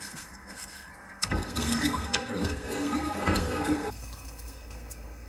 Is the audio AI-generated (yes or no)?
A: yes